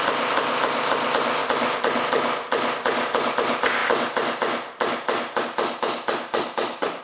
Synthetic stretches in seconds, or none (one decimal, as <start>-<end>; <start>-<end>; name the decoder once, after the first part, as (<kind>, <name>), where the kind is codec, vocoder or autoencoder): none